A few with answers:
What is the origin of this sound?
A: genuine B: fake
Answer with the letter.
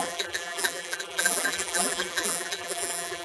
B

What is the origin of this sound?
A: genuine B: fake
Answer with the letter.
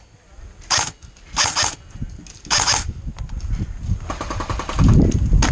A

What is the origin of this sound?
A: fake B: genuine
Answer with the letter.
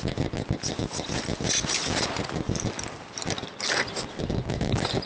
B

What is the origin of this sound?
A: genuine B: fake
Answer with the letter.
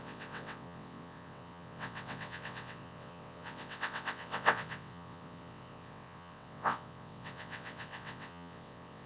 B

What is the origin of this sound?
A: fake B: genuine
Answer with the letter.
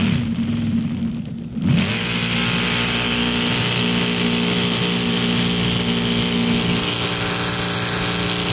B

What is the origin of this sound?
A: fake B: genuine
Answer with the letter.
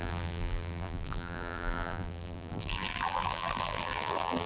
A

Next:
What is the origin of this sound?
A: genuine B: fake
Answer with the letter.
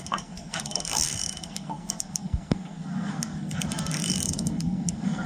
B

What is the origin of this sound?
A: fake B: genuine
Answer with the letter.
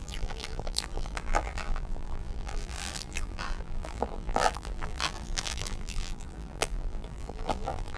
A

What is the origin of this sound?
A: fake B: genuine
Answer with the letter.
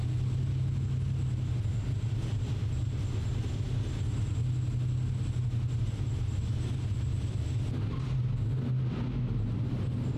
B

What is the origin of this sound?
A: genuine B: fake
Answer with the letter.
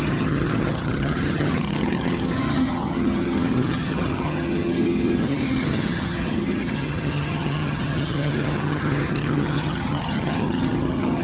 B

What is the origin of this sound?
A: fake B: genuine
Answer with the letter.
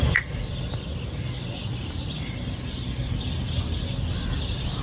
B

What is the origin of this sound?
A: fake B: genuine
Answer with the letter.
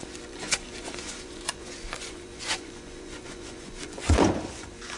A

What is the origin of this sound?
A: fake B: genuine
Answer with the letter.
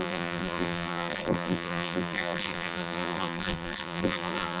A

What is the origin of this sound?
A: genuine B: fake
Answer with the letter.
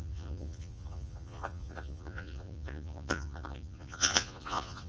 B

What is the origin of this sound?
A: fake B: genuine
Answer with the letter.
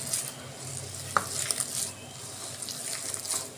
B